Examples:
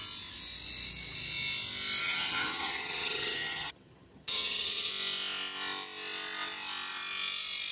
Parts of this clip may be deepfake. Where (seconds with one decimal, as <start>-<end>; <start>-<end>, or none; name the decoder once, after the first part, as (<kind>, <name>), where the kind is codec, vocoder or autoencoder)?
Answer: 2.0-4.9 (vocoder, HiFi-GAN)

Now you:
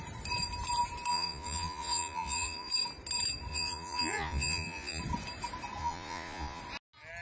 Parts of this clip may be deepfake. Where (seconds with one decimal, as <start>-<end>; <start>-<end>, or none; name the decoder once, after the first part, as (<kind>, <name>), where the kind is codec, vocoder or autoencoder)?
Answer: 1.1-2.7 (vocoder, Vocos); 3.5-5.0; 5.8-6.6

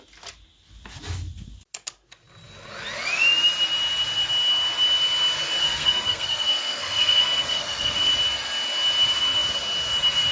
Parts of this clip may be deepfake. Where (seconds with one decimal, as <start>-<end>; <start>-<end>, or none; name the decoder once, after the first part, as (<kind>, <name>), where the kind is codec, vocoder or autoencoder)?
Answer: 5.6-8.1 (codec, SNAC)